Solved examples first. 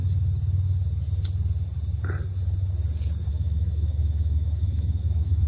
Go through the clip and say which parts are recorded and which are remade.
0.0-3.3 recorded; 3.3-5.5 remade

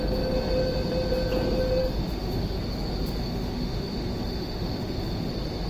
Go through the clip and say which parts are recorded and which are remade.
0.0-1.8 recorded; 1.8-2.6 remade; 2.6-3.2 recorded; 3.2-5.3 remade; 5.3-5.7 recorded

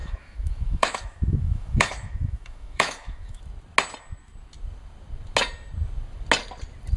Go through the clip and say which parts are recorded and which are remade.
0.0-3.4 remade; 3.4-7.0 recorded

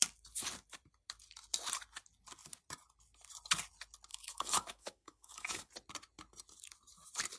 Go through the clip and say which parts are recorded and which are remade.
0.0-4.1 recorded; 4.1-5.7 remade; 5.7-7.4 recorded